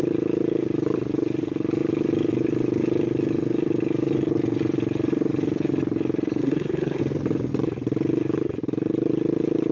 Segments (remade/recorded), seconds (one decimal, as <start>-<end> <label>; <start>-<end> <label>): 0.0-6.4 recorded; 6.4-7.0 remade; 7.0-9.7 recorded